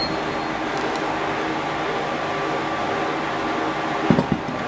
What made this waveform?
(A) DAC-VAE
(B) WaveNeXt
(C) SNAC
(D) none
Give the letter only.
D